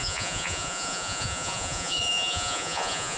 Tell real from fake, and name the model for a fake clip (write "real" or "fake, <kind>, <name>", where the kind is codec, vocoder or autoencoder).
fake, vocoder, Vocos